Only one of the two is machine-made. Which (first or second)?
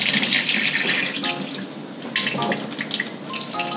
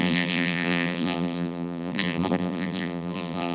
second